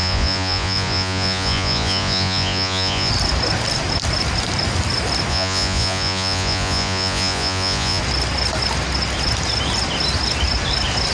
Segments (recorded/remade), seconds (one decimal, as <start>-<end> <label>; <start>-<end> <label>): 0.0-3.1 remade; 3.1-5.3 recorded; 5.3-8.0 remade; 8.0-11.1 recorded